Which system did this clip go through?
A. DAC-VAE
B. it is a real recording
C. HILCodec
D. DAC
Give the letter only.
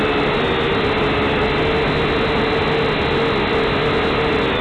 B